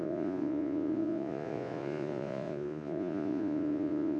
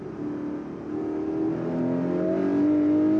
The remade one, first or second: first